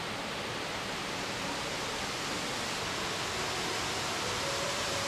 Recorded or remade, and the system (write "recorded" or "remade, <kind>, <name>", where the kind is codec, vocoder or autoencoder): recorded